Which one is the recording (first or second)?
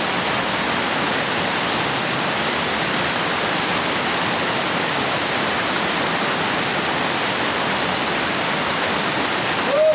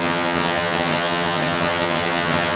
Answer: first